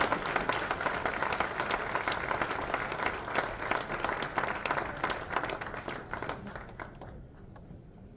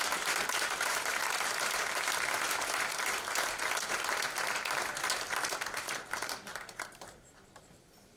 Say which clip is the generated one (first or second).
second